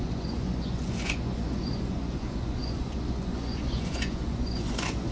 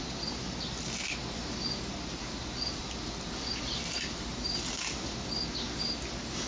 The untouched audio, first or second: second